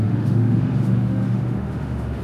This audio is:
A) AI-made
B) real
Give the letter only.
A